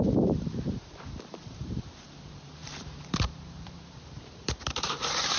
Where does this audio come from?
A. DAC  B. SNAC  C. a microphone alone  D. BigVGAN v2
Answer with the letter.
D